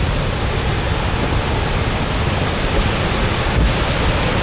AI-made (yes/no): no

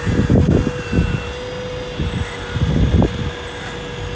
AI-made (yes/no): no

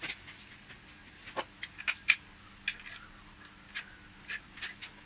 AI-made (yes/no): no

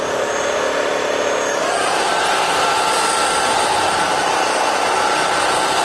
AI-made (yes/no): no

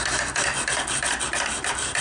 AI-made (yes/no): no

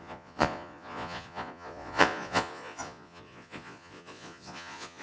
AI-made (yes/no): yes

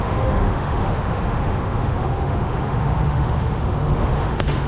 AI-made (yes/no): yes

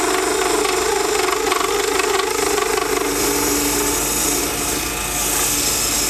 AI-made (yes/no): no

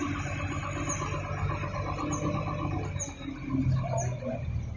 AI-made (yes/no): no